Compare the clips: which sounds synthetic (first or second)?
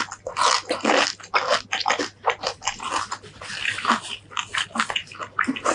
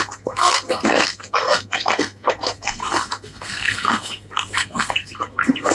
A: second